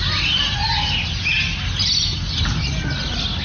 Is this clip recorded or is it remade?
recorded